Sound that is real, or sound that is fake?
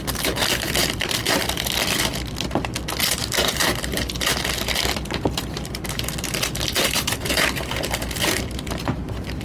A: fake